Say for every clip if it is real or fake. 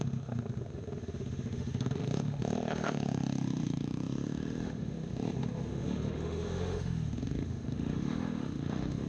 fake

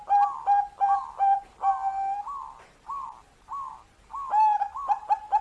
real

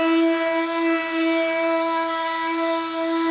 real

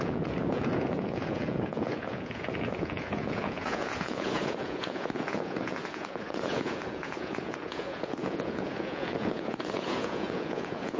fake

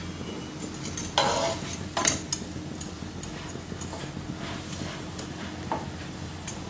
real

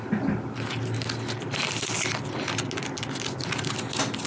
real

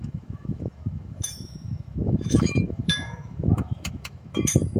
fake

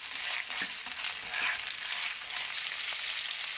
real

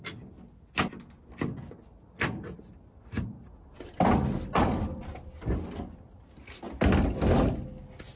real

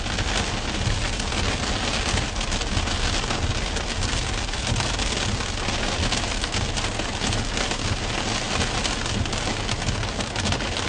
real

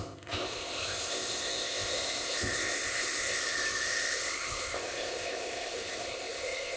fake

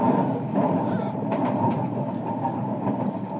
fake